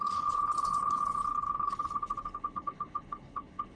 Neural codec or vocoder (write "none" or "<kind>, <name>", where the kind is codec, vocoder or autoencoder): codec, HILCodec